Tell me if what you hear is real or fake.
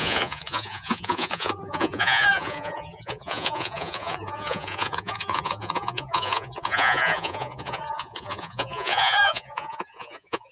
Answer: fake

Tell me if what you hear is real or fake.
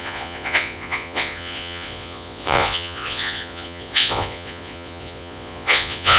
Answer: fake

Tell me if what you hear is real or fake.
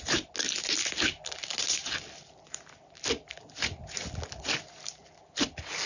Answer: real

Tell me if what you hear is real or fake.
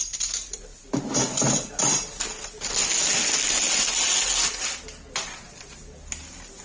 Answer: real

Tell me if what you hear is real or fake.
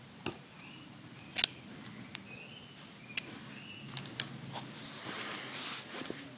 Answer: real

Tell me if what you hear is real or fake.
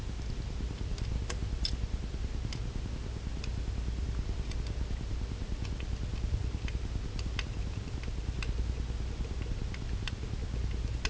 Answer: real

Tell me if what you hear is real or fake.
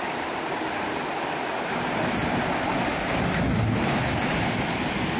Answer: real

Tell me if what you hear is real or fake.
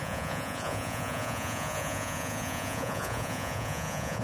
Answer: fake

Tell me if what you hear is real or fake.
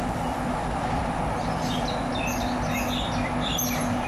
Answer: real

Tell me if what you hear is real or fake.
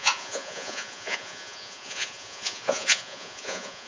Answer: fake